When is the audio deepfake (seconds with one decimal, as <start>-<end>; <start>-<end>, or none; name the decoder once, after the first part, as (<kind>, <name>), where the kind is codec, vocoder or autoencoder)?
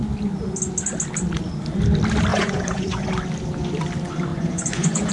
2.3-3.1 (vocoder, Vocos); 4.3-5.1